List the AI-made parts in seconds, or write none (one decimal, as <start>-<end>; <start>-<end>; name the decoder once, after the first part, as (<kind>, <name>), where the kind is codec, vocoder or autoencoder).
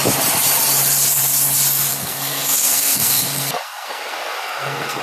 1.9-5.0 (codec, SNAC)